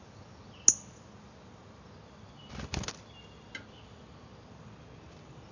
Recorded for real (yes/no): yes